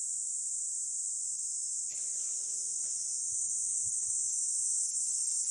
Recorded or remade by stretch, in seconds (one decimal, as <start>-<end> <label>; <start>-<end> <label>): 0.0-5.5 recorded